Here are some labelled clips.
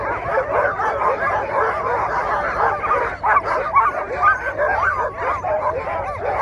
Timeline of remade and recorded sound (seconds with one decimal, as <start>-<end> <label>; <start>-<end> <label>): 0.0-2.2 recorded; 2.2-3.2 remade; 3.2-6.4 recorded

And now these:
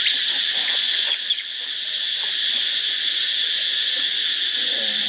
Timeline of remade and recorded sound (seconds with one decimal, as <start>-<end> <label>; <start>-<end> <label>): 0.0-0.6 recorded; 0.6-1.5 remade; 1.5-2.4 recorded; 2.4-4.0 remade; 4.0-5.1 recorded

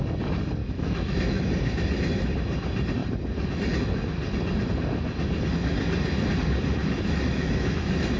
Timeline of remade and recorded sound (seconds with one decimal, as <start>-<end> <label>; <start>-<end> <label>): 0.0-0.6 recorded; 0.6-1.5 remade; 1.5-6.8 recorded; 6.8-8.2 remade

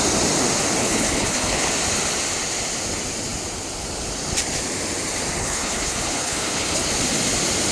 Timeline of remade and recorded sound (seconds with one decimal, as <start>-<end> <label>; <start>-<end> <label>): 0.0-0.8 recorded; 0.8-1.7 remade; 1.7-5.4 recorded; 5.4-6.9 remade; 6.9-7.7 recorded